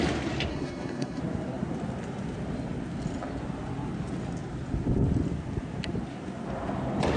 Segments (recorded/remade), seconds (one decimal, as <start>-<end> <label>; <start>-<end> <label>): 0.0-0.5 recorded; 0.5-1.2 remade; 1.2-7.2 recorded